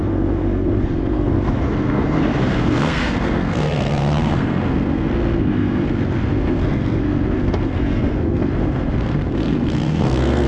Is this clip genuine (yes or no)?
no